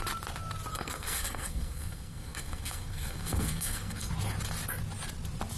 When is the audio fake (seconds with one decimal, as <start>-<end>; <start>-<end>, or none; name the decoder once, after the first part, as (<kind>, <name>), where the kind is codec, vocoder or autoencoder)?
0.7-4.1 (codec, SNAC)